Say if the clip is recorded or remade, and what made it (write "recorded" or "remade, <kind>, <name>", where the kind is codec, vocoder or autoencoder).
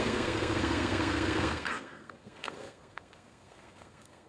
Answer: remade, codec, SNAC